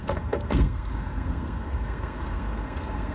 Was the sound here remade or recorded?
remade